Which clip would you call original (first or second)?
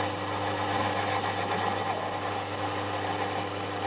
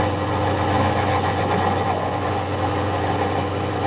first